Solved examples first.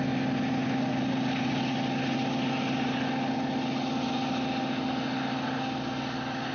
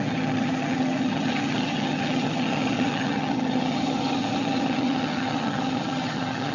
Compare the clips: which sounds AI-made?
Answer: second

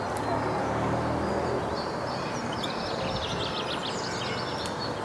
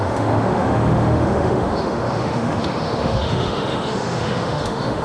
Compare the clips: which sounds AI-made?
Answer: second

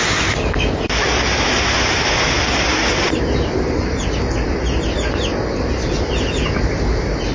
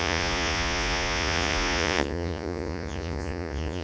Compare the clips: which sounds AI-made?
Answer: second